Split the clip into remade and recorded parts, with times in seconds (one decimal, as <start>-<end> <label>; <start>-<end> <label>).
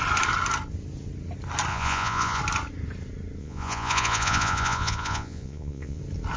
0.0-1.7 recorded; 1.7-2.4 remade; 2.4-3.4 recorded; 3.4-6.0 remade; 6.0-6.4 recorded